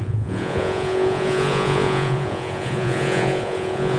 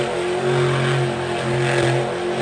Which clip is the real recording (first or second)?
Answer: second